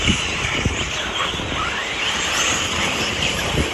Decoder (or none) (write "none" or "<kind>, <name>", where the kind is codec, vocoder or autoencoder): vocoder, BigVGAN v2